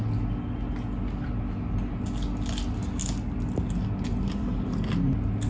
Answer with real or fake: real